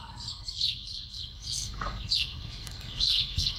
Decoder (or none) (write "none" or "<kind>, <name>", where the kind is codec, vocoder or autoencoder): codec, SNAC